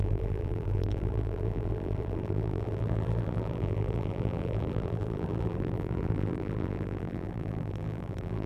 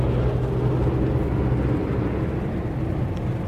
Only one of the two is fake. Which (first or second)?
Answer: first